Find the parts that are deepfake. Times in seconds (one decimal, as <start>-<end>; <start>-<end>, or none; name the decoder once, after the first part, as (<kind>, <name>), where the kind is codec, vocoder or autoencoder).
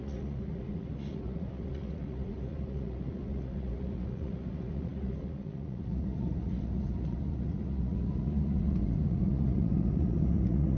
0.0-10.8 (vocoder, Vocos)